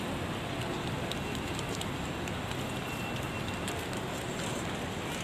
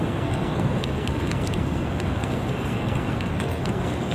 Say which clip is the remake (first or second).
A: second